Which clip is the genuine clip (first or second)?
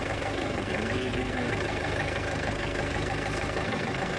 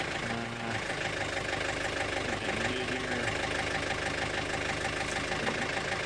second